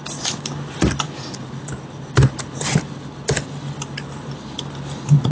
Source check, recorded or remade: recorded